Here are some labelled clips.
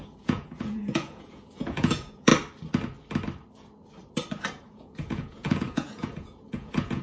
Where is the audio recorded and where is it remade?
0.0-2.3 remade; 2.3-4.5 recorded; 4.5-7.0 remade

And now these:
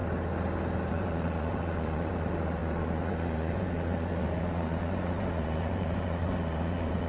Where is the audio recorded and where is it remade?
0.0-0.9 recorded; 0.9-7.1 remade

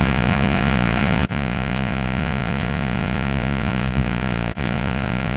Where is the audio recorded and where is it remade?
0.0-5.4 remade

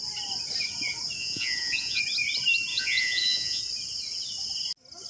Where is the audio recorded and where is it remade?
0.0-1.2 recorded; 1.2-2.0 remade; 2.0-2.7 recorded; 2.7-3.6 remade; 3.6-5.1 recorded

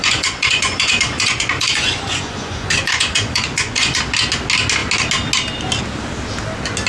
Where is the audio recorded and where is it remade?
0.0-4.0 remade; 4.0-6.9 recorded

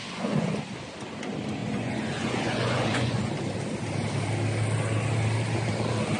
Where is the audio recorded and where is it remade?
0.0-0.6 remade; 0.6-1.6 recorded; 1.6-3.3 remade; 3.3-6.2 recorded

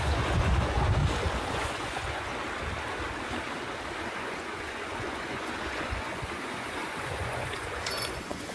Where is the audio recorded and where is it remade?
0.0-1.0 remade; 1.0-1.5 recorded; 1.5-2.3 remade; 2.3-4.1 recorded; 4.1-8.5 remade

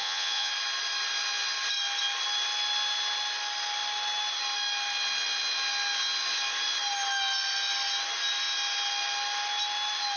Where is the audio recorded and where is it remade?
0.0-0.5 remade; 0.5-10.2 recorded